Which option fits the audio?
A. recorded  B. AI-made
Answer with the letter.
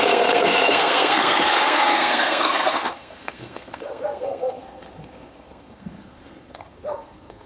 B